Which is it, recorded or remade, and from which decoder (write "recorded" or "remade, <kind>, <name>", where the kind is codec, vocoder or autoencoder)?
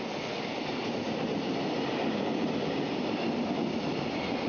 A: recorded